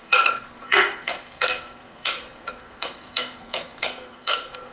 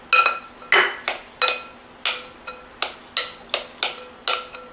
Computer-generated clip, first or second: first